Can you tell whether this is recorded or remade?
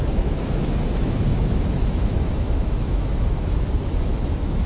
remade